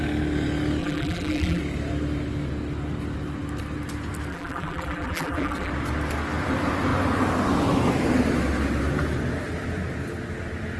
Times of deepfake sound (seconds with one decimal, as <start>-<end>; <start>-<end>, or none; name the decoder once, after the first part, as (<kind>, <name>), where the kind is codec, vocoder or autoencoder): 0.8-1.6 (vocoder, BigVGAN v2); 4.3-5.7

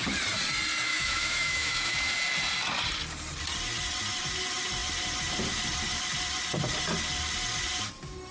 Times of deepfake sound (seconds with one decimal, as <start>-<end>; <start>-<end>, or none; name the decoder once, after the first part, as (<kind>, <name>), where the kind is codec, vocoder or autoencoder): 0.9-2.1 (autoencoder, DAC-VAE)

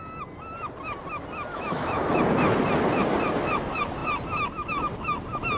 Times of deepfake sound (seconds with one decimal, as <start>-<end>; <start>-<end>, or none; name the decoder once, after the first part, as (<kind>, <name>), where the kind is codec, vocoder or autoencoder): 1.5-2.2 (autoencoder, DAC-VAE)

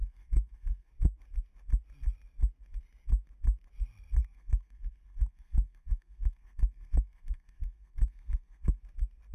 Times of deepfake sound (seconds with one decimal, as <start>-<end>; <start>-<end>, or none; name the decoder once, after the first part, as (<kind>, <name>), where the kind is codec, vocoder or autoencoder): 0.0-0.9 (codec, SNAC); 4.2-8.8

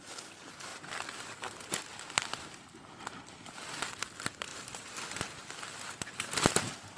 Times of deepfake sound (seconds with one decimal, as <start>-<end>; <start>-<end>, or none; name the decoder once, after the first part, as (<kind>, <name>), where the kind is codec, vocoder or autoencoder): none

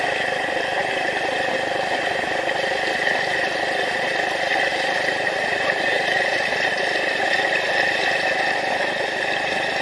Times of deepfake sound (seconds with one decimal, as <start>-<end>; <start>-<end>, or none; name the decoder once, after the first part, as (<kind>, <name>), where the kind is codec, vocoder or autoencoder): 0.8-1.3 (vocoder, BigVGAN v2); 4.7-6.8

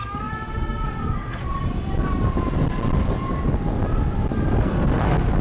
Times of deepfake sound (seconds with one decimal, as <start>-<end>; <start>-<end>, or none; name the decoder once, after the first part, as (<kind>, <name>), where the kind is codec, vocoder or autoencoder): 0.0-1.4 (codec, SNAC); 4.6-5.4